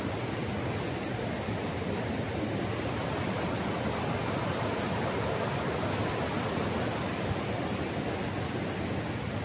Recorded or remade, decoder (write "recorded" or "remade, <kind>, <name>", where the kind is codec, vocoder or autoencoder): recorded